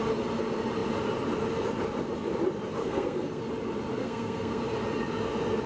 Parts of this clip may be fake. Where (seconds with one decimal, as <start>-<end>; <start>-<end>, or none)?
2.8-3.4; 4.0-4.6